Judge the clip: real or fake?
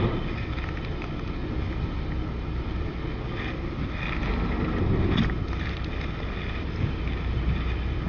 real